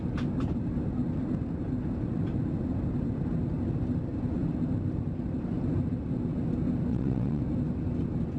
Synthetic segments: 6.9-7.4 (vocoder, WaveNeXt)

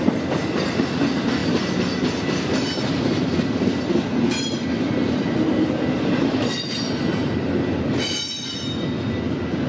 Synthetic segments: none

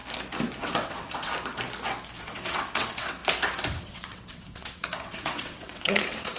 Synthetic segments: 0.6-1.3 (vocoder, WaveNeXt); 2.2-3.2; 3.8-6.4